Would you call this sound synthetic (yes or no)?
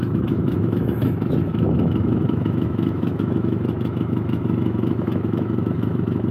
yes